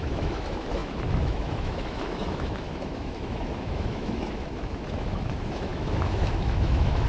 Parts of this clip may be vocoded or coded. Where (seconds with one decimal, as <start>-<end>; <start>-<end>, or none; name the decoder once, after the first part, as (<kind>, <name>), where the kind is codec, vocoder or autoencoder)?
0.0-7.1 (autoencoder, DAC-VAE)